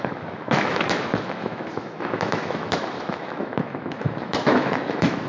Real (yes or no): no